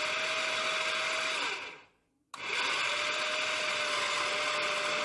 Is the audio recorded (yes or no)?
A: yes